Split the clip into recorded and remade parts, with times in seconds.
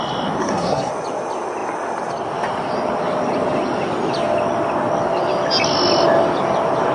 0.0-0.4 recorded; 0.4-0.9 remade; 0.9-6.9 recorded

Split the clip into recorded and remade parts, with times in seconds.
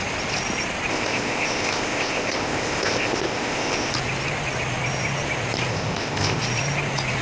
0.0-0.9 recorded; 0.9-3.9 remade; 3.9-5.7 recorded; 5.7-6.4 remade; 6.4-7.2 recorded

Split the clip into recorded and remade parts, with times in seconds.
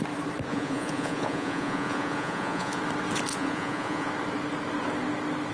0.0-0.5 recorded; 0.5-2.8 remade; 2.8-3.3 recorded; 3.3-4.1 remade; 4.1-5.5 recorded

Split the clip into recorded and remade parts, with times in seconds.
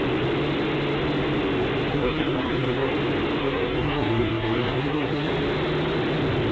0.0-1.9 recorded; 1.9-2.9 remade; 2.9-3.4 recorded; 3.4-5.3 remade; 5.3-6.5 recorded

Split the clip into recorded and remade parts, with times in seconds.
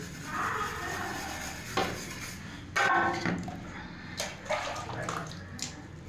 0.0-6.1 recorded